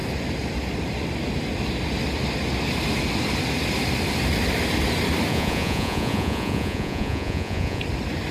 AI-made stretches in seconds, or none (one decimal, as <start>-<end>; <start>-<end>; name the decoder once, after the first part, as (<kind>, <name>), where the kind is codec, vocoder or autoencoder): 5.3-7.8 (vocoder, Vocos)